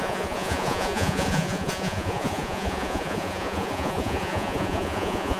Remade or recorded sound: remade